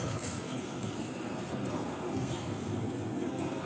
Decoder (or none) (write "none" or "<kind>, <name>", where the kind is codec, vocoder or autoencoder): codec, SNAC